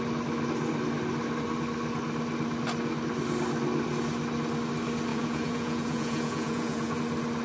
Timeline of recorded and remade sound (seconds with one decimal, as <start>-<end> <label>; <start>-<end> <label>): 0.0-5.1 recorded; 5.1-7.0 remade; 7.0-7.4 recorded